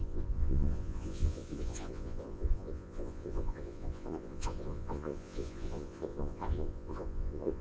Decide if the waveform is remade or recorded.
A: remade